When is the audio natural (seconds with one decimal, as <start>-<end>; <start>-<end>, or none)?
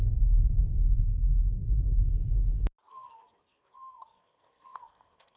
1.6-2.9